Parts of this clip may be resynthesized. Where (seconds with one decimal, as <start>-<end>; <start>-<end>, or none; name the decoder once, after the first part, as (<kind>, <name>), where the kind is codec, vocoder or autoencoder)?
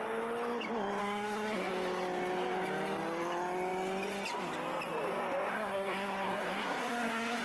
1.0-1.7 (codec, SNAC); 5.5-7.4